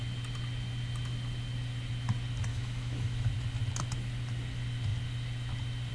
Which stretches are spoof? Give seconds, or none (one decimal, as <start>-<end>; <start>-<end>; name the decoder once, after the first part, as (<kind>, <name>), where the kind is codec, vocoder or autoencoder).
2.5-3.3 (autoencoder, DAC-VAE)